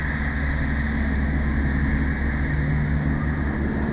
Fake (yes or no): no